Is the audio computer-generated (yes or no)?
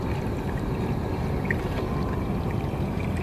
yes